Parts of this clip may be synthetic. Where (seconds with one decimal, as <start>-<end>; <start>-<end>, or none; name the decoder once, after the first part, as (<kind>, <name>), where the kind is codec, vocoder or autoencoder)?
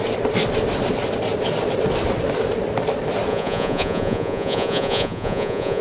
3.3-5.8 (vocoder, Vocos)